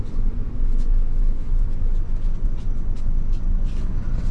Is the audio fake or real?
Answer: fake